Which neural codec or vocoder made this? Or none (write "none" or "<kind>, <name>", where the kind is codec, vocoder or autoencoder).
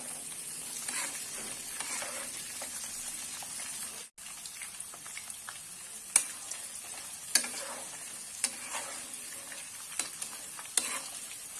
none